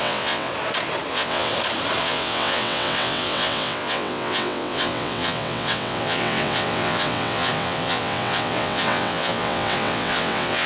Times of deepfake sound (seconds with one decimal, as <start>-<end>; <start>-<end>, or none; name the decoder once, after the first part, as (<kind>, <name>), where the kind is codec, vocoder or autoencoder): 0.0-0.5 (vocoder, WaveNeXt); 1.1-1.5; 2.0-10.7